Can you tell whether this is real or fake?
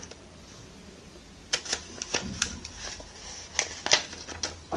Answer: real